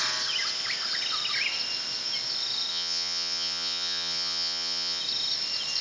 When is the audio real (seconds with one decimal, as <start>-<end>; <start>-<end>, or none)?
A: 0.0-2.7; 5.0-5.8